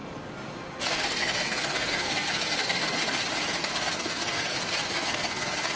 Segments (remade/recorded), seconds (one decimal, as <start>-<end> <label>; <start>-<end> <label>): 0.0-0.8 recorded; 0.8-3.0 remade; 3.0-3.6 recorded; 3.6-5.8 remade